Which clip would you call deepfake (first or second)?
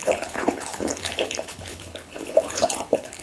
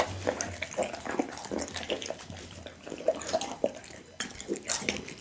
first